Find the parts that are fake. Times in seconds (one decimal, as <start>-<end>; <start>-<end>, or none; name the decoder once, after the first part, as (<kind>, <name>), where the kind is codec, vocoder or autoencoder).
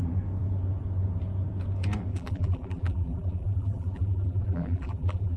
2.1-5.4 (vocoder, BigVGAN v2)